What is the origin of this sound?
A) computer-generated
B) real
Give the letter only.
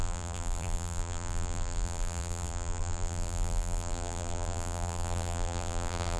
A